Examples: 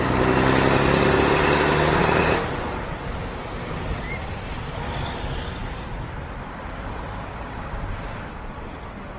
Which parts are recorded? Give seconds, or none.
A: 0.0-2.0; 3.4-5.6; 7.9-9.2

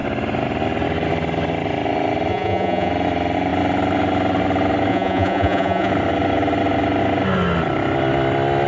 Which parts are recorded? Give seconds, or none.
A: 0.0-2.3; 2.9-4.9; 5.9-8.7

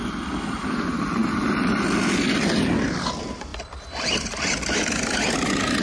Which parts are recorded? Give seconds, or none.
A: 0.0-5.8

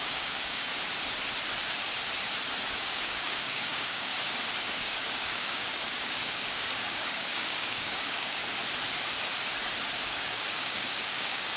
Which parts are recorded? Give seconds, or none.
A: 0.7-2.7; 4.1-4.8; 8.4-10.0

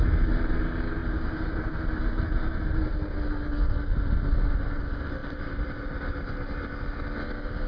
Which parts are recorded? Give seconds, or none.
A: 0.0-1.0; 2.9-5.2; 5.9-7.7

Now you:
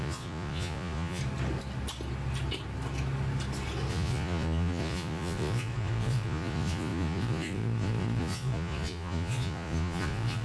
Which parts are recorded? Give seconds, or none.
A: 1.2-3.9